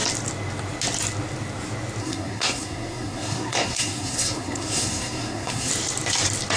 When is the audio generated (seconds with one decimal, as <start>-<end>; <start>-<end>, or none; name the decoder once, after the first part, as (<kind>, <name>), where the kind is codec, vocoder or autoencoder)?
2.0-5.7 (codec, SNAC)